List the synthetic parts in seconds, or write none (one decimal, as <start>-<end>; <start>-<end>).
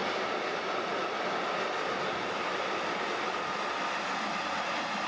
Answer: none